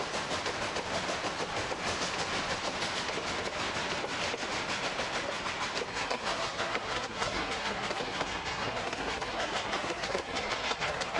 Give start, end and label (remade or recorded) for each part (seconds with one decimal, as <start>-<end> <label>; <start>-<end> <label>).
0.0-5.9 recorded; 5.9-11.2 remade